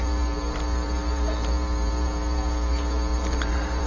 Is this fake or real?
fake